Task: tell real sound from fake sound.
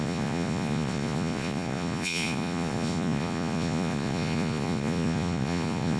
fake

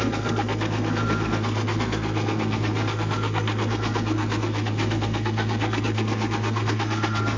fake